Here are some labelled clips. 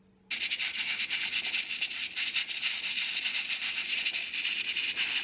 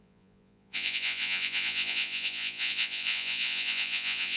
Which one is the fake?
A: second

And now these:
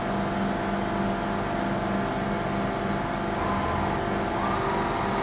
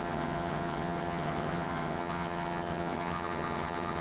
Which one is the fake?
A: second